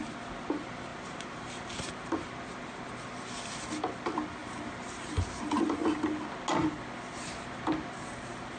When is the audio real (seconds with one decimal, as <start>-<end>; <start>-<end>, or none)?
0.0-0.9; 1.9-4.4; 5.1-8.6